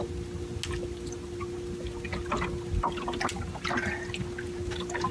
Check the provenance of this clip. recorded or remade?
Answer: recorded